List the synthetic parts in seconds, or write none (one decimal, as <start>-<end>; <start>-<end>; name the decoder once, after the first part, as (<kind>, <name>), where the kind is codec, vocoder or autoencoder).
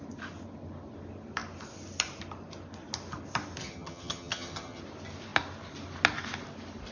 3.6-4.8 (vocoder, HiFi-GAN)